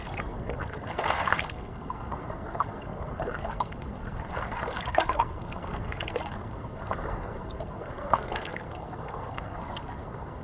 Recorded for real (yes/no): no